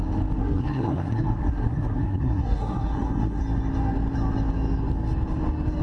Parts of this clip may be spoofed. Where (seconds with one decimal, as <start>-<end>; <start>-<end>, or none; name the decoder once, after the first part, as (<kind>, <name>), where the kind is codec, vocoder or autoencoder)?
0.4-3.4 (codec, SNAC)